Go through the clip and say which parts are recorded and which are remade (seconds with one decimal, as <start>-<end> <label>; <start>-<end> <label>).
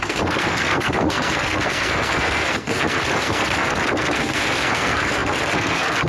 0.0-6.1 remade